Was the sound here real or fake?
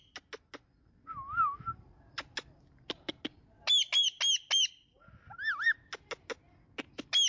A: real